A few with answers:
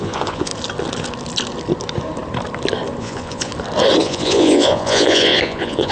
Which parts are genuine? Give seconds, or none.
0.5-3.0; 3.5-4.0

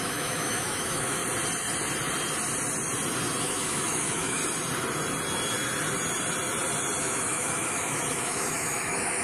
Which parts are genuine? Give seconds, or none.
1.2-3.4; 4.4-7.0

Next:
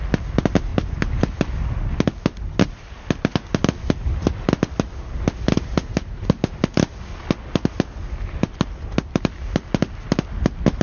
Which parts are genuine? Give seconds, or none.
0.0-10.8

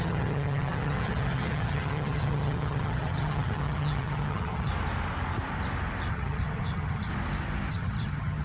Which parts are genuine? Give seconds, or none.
4.7-6.1; 7.1-7.7